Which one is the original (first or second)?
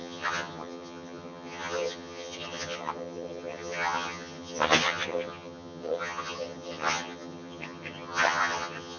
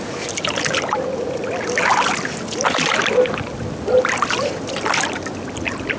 second